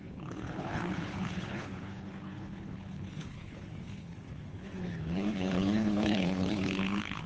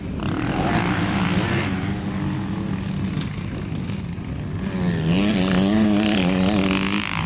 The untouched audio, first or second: second